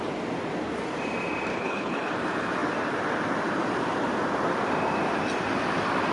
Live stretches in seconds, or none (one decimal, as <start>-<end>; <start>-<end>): 0.0-1.5; 2.1-6.1